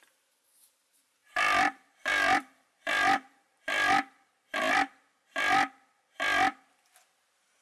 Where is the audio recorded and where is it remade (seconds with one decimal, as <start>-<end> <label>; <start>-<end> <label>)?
0.0-1.2 recorded; 1.2-4.7 remade; 4.7-7.6 recorded

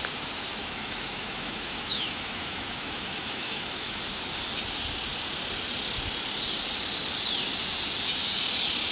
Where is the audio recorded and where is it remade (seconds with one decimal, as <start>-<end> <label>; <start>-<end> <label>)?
0.0-0.6 recorded; 0.6-4.0 remade; 4.0-8.9 recorded

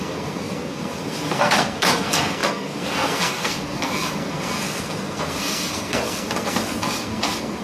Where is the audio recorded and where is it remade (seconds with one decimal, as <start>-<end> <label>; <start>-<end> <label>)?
0.0-7.6 remade

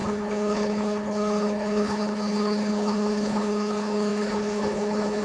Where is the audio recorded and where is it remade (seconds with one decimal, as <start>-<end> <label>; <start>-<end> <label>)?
0.0-5.2 remade

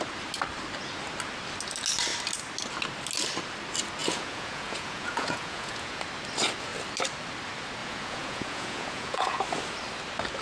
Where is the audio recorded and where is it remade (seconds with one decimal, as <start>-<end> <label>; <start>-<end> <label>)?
0.0-4.0 recorded; 4.0-6.0 remade; 6.0-7.8 recorded; 7.8-9.4 remade; 9.4-10.4 recorded

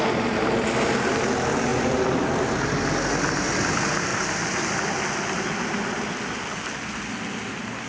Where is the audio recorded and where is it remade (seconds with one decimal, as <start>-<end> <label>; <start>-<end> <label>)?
0.0-7.9 recorded